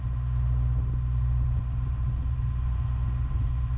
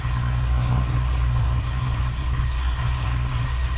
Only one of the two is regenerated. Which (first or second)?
second